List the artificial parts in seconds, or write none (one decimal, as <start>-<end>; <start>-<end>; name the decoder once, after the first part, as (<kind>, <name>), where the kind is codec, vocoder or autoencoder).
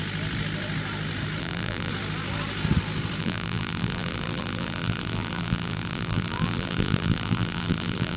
1.4-1.9 (vocoder, BigVGAN v2); 3.2-8.2